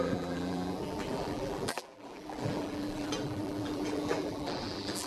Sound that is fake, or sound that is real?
fake